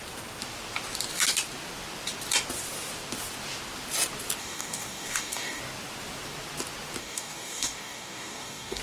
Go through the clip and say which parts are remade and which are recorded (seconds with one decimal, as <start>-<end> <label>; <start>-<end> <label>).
0.0-4.4 recorded; 4.4-5.6 remade; 5.6-7.0 recorded; 7.0-8.8 remade